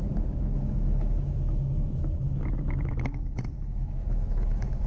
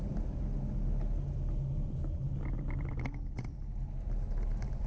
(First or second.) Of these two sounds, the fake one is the first